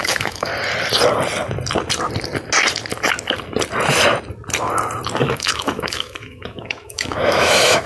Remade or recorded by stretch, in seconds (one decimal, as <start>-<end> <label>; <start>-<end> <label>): 0.0-0.5 remade; 0.5-5.2 recorded; 5.2-7.9 remade